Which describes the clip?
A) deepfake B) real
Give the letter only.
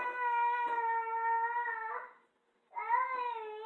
B